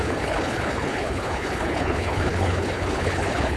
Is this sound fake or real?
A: fake